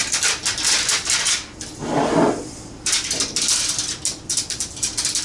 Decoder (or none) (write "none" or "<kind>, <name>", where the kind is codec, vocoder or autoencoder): none